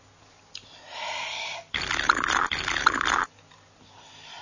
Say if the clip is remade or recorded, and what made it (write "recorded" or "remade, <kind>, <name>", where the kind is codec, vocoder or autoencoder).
recorded